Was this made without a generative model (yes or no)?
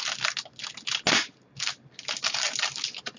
yes